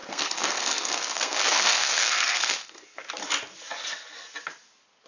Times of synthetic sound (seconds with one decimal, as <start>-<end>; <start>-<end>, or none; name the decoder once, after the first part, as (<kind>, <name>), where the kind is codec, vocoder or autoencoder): 0.0-3.1 (codec, SNAC)